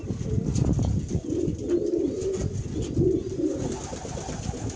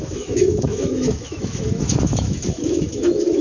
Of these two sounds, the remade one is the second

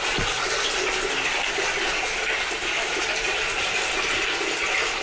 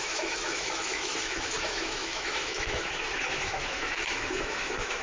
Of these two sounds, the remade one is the second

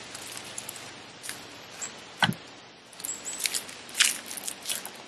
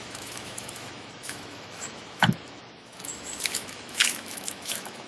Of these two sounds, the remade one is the second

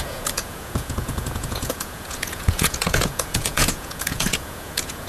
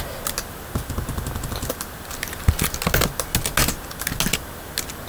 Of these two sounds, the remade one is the first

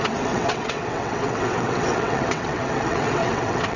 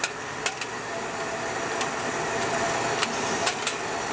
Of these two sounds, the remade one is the first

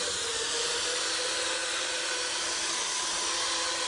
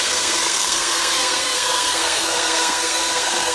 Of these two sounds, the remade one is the second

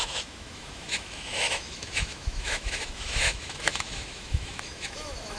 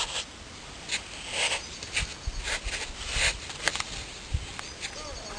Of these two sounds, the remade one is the first